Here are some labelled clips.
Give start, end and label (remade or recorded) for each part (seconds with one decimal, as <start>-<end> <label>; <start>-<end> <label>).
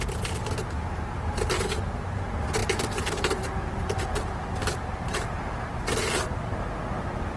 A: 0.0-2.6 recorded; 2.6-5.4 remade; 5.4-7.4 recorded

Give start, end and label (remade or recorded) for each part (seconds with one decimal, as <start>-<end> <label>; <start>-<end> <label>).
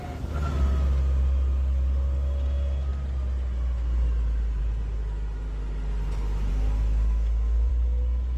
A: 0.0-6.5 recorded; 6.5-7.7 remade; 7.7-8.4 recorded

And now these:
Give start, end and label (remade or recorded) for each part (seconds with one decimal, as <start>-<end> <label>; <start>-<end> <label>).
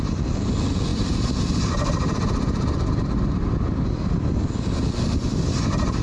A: 0.0-0.9 recorded; 0.9-4.5 remade; 4.5-6.0 recorded